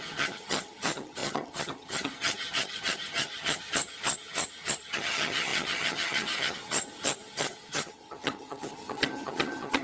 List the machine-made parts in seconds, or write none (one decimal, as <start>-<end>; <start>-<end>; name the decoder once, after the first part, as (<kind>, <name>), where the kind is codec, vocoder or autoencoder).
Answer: 0.0-9.8 (vocoder, HiFi-GAN)